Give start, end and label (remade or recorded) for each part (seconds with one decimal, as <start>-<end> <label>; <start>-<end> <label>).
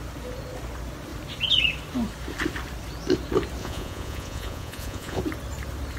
0.0-3.6 recorded; 3.6-5.2 remade; 5.2-6.0 recorded